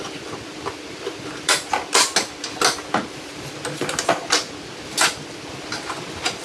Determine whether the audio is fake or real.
real